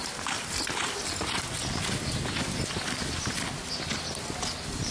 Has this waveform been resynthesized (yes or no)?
no